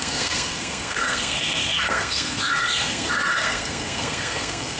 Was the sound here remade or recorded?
remade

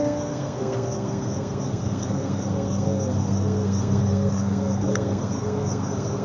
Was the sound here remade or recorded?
remade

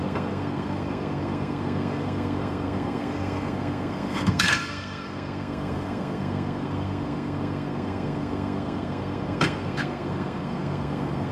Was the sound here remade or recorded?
remade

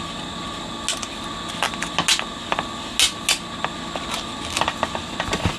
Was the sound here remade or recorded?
recorded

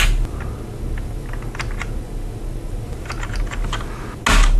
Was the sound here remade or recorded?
recorded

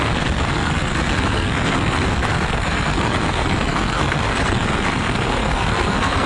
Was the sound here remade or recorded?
remade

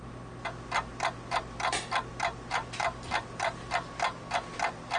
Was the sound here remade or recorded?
recorded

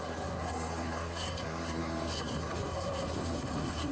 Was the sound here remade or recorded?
remade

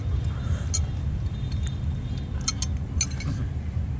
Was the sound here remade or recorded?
recorded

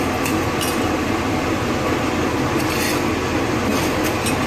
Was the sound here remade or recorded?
recorded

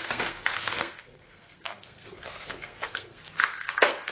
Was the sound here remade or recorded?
remade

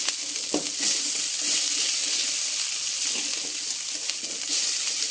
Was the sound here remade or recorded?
recorded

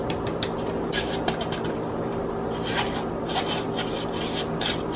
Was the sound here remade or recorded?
recorded